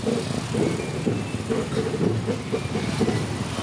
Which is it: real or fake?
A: real